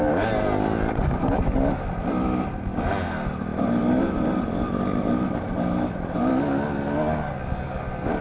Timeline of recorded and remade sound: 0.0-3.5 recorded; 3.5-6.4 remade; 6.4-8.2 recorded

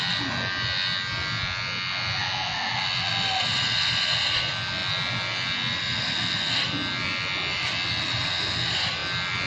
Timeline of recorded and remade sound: 0.0-9.5 recorded

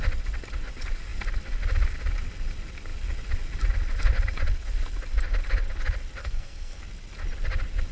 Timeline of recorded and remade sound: 0.0-6.2 recorded; 6.2-6.8 remade; 6.8-7.9 recorded

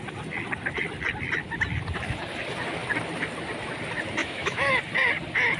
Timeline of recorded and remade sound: 0.0-4.2 recorded; 4.2-4.7 remade; 4.7-5.6 recorded

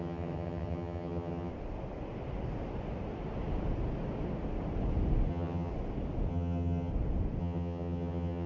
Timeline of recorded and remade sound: 0.0-1.5 remade; 1.5-5.3 recorded; 5.3-5.7 remade; 5.7-6.3 recorded; 6.3-6.9 remade; 6.9-7.4 recorded; 7.4-8.5 remade

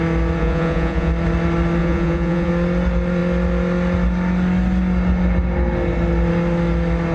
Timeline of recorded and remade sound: 0.0-0.4 recorded; 0.4-1.1 remade; 1.1-1.8 recorded; 1.8-2.5 remade; 2.5-7.1 recorded

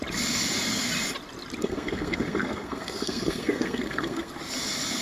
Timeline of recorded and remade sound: 0.0-1.6 recorded; 1.6-4.3 remade; 4.3-5.0 recorded

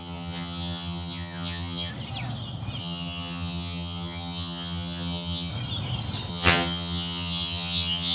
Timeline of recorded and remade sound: 0.0-1.9 remade; 1.9-2.8 recorded; 2.8-5.5 remade; 5.5-6.3 recorded; 6.3-8.1 remade